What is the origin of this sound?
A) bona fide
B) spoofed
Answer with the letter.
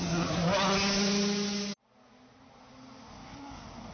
A